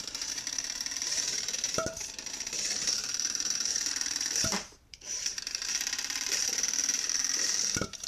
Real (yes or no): no